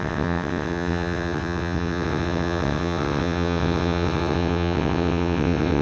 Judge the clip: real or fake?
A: fake